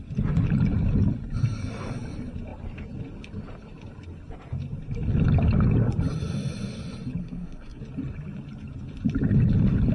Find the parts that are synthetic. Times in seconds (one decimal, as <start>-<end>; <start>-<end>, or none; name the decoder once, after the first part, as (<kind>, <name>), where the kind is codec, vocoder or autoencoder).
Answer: 7.2-7.8 (codec, SNAC)